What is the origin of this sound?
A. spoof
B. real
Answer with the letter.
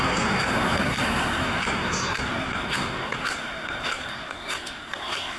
A